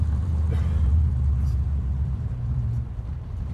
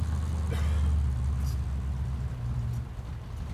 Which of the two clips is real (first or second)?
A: second